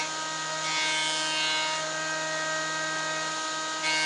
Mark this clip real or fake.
real